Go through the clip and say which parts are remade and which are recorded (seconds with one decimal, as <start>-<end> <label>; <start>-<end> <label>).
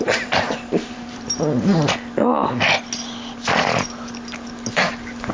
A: 0.0-1.7 remade; 1.7-5.3 recorded